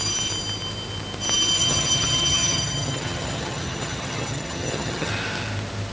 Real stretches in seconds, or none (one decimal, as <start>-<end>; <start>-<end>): 0.0-1.6; 5.1-5.9